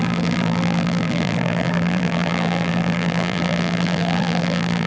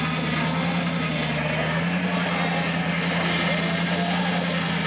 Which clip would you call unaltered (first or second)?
second